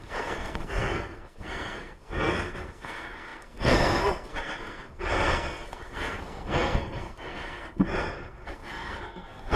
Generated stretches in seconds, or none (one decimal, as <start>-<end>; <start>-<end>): 0.0-9.6